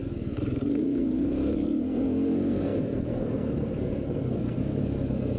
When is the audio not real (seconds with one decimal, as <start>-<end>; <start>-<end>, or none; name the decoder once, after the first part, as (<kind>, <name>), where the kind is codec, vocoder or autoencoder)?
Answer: 0.0-5.4 (codec, SNAC)